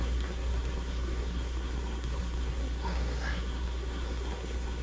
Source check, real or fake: fake